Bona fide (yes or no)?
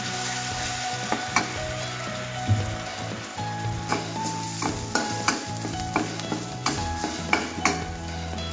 yes